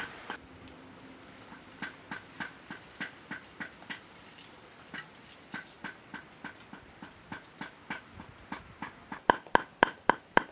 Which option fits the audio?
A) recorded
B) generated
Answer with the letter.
A